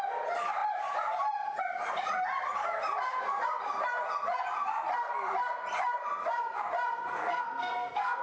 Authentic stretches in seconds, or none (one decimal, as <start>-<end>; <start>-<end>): 0.0-7.1